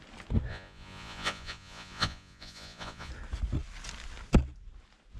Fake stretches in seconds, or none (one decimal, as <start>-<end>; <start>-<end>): 0.5-3.1